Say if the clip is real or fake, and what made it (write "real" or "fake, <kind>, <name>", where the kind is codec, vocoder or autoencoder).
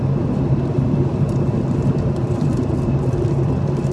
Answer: real